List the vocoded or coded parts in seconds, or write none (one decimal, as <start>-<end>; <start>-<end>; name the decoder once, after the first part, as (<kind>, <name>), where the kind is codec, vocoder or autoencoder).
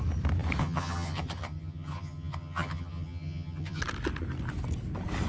0.6-3.8 (vocoder, HiFi-GAN)